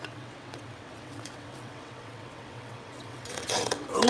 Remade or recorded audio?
remade